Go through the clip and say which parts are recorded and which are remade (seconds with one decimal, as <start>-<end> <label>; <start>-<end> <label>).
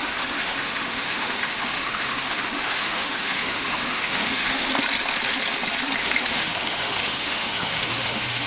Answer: 0.0-4.7 remade; 4.7-6.0 recorded; 6.0-8.5 remade